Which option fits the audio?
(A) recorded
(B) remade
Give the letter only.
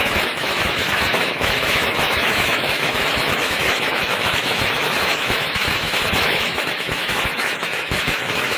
B